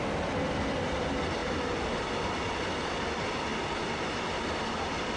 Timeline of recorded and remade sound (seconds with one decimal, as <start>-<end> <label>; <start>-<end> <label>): 0.0-5.2 recorded

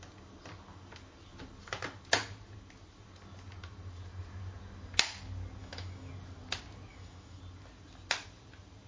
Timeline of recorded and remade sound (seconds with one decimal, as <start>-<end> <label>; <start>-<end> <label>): 0.0-5.6 recorded; 5.6-6.1 remade; 6.1-6.9 recorded; 6.9-7.4 remade; 7.4-8.9 recorded

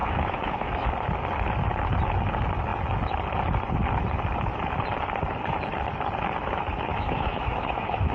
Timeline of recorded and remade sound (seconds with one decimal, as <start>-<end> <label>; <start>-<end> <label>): 0.0-0.9 remade; 0.9-6.9 recorded; 6.9-8.1 remade

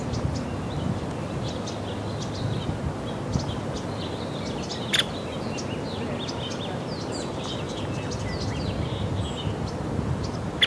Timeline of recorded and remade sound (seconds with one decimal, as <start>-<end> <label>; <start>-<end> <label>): 0.0-10.7 recorded

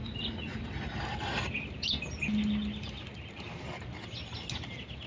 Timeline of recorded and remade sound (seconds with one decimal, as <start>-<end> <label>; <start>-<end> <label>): 0.0-5.1 recorded

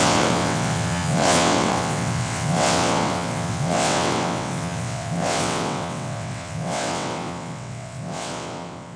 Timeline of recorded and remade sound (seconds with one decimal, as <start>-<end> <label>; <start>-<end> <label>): 0.0-9.0 remade

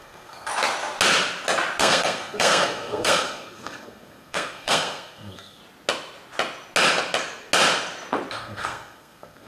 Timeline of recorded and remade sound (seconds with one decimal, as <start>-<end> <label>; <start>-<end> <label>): 0.0-0.5 remade; 0.5-1.8 recorded; 1.8-5.6 remade; 5.6-8.3 recorded; 8.3-9.5 remade